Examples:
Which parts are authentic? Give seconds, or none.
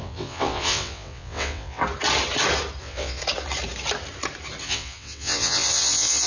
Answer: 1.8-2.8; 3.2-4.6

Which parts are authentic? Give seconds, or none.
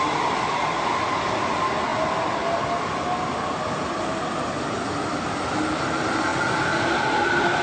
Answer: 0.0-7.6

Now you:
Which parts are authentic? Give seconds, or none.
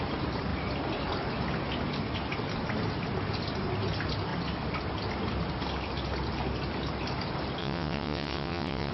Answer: 0.0-7.6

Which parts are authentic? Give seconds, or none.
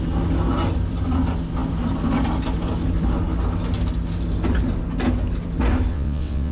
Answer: 0.0-5.9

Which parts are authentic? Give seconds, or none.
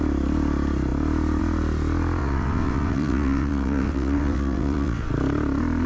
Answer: 0.0-2.2; 5.1-5.9